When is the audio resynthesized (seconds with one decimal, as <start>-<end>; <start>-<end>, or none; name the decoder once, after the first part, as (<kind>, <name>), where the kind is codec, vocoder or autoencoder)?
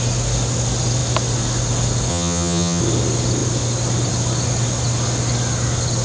2.1-2.8 (vocoder, HiFi-GAN)